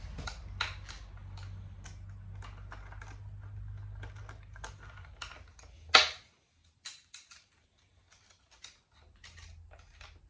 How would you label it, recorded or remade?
recorded